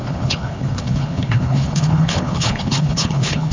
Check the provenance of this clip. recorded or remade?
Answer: remade